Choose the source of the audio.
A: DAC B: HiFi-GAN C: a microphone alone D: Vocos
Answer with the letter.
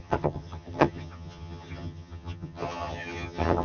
B